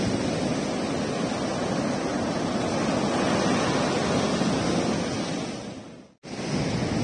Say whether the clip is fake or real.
real